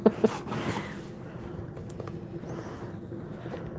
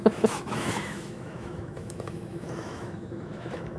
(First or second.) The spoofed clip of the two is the second